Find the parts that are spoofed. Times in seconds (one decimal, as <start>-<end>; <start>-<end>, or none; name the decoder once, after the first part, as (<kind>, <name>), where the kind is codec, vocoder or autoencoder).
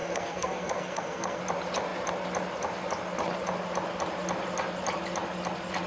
0.0-1.4 (codec, SNAC)